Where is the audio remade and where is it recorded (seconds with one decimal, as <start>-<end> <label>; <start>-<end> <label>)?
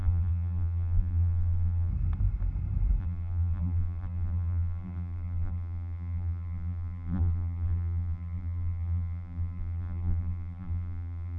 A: 0.0-1.9 remade; 1.9-3.0 recorded; 3.0-11.4 remade